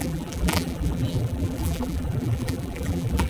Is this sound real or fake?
fake